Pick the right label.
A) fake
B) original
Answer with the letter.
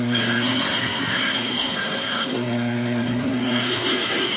A